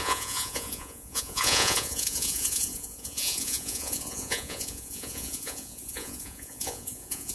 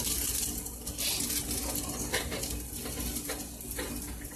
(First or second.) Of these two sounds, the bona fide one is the second